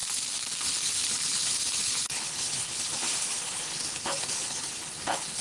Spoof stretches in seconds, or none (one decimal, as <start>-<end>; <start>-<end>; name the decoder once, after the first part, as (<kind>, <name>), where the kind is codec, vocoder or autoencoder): 0.6-5.4 (codec, HILCodec)